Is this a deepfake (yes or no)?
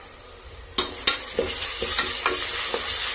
no